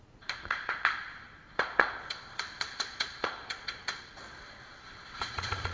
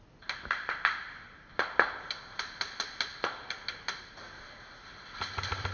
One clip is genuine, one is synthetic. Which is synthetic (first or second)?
first